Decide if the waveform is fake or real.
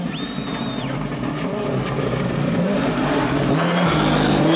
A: real